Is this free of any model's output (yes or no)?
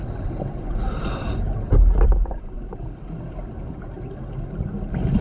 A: yes